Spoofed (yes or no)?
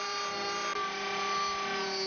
no